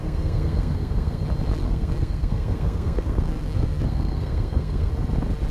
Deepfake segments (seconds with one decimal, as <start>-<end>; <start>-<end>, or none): 0.0-1.2; 1.6-4.9